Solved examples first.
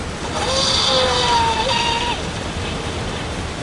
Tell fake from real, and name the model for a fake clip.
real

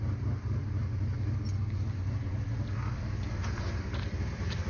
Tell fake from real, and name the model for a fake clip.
real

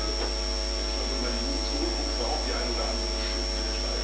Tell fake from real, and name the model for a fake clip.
real